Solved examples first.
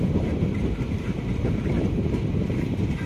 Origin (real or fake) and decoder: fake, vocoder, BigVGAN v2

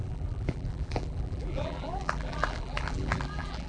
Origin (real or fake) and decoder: fake, vocoder, BigVGAN v2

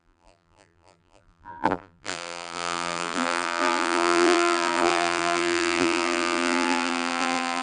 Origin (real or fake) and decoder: fake, vocoder, BigVGAN v2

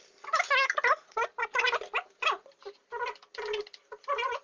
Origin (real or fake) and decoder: real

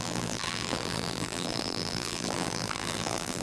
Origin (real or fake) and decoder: fake, vocoder, BigVGAN v2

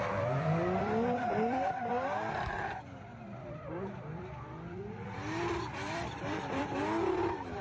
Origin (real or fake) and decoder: fake, vocoder, BigVGAN v2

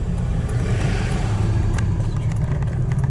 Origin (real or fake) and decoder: fake, vocoder, BigVGAN v2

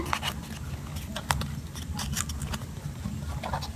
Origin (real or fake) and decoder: real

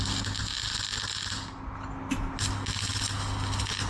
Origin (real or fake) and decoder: real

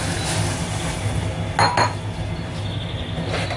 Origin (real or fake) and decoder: real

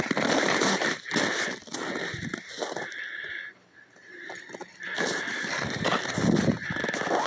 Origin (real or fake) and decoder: real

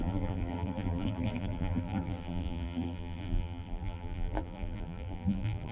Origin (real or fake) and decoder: fake, vocoder, BigVGAN v2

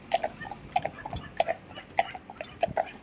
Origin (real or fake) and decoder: fake, vocoder, BigVGAN v2